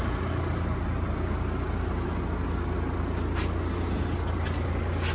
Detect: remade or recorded recorded